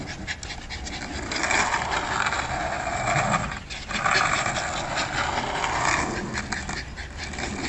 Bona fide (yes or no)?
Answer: yes